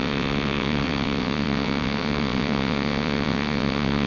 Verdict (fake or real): fake